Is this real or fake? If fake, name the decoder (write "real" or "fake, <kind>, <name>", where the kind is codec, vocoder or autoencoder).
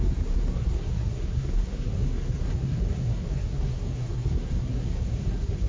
fake, codec, SNAC